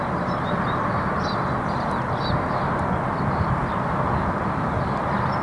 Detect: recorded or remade recorded